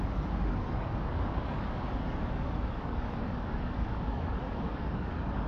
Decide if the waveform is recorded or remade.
remade